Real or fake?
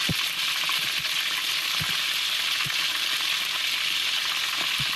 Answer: real